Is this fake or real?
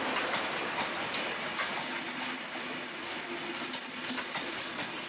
real